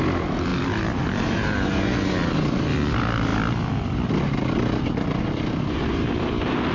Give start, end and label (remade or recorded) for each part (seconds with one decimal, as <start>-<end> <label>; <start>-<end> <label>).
0.0-6.7 recorded